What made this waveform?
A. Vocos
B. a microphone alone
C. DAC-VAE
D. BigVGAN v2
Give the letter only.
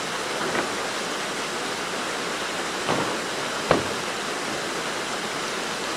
B